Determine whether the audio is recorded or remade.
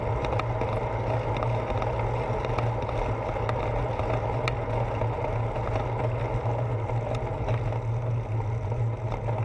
recorded